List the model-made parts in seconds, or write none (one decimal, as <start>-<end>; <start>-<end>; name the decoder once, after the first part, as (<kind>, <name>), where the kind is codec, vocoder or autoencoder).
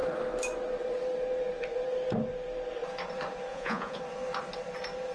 3.5-4.0 (vocoder, Vocos)